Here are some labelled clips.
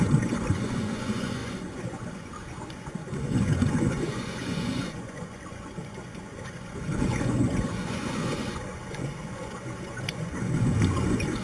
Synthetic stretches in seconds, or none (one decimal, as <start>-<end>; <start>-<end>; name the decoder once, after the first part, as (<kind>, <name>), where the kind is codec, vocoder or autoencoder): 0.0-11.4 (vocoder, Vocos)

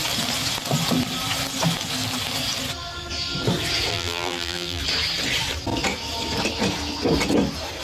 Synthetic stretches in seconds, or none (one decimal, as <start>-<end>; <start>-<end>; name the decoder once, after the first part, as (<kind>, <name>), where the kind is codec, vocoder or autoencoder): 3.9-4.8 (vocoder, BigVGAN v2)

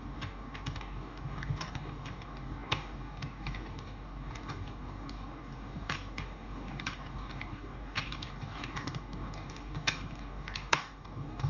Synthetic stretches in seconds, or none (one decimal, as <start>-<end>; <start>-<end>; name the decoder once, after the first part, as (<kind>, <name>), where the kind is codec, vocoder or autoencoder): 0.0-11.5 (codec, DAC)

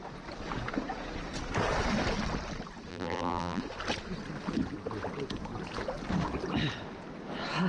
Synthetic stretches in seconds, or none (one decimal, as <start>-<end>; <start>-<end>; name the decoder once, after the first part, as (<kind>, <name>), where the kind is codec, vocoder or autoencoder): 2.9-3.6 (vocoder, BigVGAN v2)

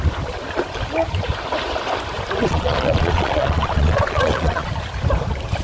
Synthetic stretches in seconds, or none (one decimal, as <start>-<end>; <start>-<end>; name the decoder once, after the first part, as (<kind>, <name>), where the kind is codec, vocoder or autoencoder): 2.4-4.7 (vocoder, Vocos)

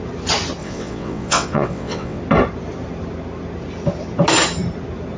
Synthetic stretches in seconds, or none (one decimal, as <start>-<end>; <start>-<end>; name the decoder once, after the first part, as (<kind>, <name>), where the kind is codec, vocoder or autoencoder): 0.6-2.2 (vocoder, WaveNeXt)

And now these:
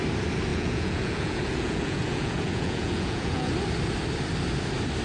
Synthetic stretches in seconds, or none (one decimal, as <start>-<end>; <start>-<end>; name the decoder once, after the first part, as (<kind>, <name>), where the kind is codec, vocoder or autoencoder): 0.5-3.5 (vocoder, Vocos)